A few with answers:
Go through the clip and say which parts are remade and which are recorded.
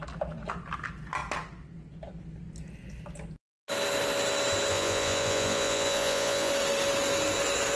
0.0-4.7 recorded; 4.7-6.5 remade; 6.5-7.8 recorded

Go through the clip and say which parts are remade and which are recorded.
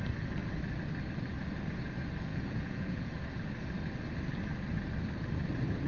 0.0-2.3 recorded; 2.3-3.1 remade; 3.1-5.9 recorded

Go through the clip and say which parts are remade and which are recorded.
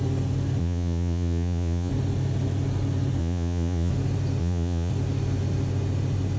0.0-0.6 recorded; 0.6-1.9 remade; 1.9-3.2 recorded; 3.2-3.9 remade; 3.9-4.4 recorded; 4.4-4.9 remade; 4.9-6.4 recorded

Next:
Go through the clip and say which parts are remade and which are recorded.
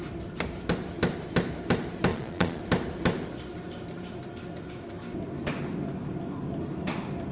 0.0-2.1 recorded; 2.1-2.6 remade; 2.6-7.3 recorded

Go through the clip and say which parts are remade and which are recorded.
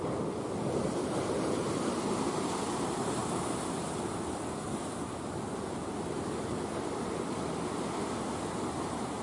0.0-9.2 recorded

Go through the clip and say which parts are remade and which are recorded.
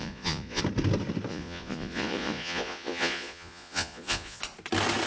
0.0-0.6 remade; 0.6-1.3 recorded; 1.3-4.4 remade; 4.4-5.1 recorded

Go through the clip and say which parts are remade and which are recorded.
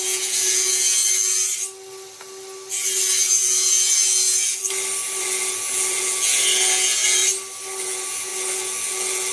0.0-1.0 remade; 1.0-3.3 recorded; 3.3-4.6 remade; 4.6-5.2 recorded; 5.2-7.2 remade; 7.2-7.8 recorded; 7.8-9.3 remade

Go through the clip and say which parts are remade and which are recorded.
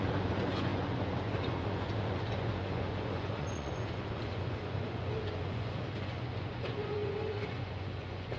0.0-8.4 remade